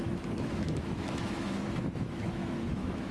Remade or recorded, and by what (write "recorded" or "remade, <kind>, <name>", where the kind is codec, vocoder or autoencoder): remade, autoencoder, DAC-VAE